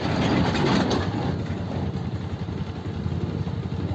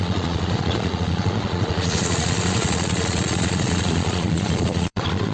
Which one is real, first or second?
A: first